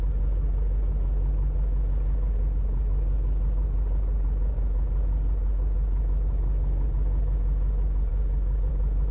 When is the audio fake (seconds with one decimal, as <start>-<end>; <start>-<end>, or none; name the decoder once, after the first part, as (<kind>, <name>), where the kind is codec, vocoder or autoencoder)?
none

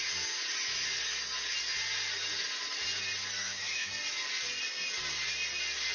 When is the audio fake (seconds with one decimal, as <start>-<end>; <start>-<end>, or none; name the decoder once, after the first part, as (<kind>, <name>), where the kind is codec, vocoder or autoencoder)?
3.4-3.9 (autoencoder, DAC-VAE)

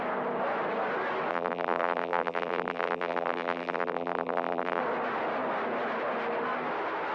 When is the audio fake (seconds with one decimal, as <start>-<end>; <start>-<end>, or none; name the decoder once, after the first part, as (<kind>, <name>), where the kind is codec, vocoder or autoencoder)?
1.3-4.8 (vocoder, BigVGAN v2)

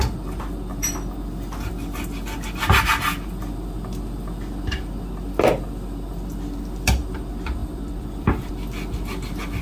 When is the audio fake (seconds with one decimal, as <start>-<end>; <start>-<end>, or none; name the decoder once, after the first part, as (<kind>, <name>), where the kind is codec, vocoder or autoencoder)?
7.6-8.5 (vocoder, BigVGAN v2)

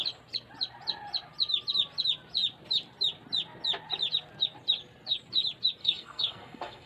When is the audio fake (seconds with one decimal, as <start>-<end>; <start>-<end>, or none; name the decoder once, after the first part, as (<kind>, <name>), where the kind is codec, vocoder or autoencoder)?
5.8-6.9 (codec, SNAC)

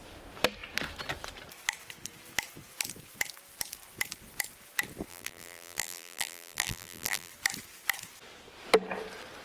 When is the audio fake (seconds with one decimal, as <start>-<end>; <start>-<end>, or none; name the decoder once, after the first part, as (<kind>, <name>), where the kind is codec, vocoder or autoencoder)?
5.1-7.3 (vocoder, BigVGAN v2)